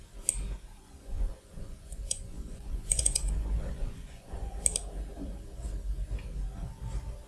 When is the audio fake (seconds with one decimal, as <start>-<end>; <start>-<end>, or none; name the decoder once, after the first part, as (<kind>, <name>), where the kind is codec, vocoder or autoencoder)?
0.7-4.5 (vocoder, Vocos)